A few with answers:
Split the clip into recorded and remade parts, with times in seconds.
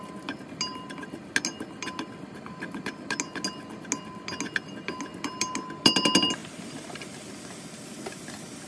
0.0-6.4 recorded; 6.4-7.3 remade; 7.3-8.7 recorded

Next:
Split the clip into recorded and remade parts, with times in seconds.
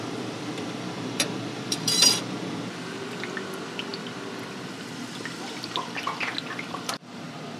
0.0-7.6 remade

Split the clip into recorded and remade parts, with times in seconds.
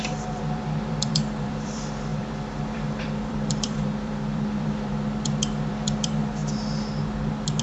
0.0-6.4 remade; 6.4-7.6 recorded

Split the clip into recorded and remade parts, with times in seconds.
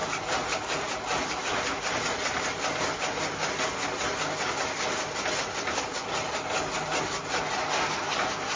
0.0-1.4 remade; 1.4-8.6 recorded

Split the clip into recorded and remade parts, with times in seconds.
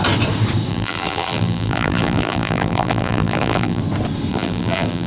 0.0-0.7 recorded; 0.7-3.8 remade; 3.8-4.3 recorded; 4.3-5.1 remade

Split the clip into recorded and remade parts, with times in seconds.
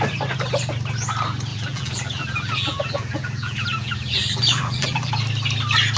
0.0-1.5 recorded; 1.5-5.1 remade; 5.1-6.0 recorded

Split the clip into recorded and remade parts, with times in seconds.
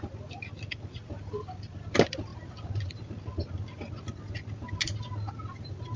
0.0-2.3 recorded; 2.3-2.9 remade; 2.9-6.0 recorded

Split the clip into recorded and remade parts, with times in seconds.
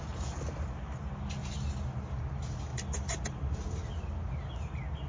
0.0-1.4 recorded; 1.4-2.2 remade; 2.2-2.7 recorded; 2.7-3.9 remade; 3.9-5.1 recorded